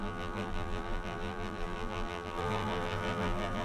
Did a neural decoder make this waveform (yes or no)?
yes